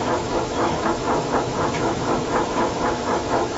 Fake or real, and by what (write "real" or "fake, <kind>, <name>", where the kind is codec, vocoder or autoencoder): fake, autoencoder, DAC-VAE